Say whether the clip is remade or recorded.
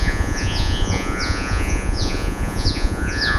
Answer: remade